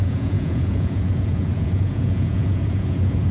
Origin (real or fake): fake